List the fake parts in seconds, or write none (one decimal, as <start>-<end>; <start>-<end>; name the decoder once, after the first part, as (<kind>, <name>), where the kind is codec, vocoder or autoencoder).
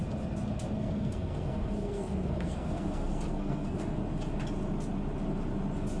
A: 0.8-4.0 (codec, SNAC)